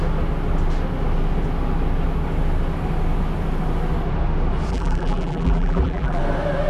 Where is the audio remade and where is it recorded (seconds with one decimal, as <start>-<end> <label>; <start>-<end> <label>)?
0.0-4.7 recorded; 4.7-6.2 remade; 6.2-6.7 recorded